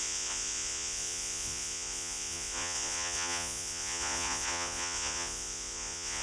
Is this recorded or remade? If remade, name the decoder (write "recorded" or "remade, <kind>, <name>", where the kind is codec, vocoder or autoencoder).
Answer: remade, vocoder, Vocos